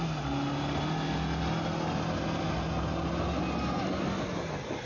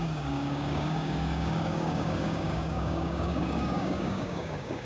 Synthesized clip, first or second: second